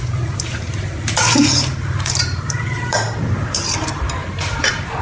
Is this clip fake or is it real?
fake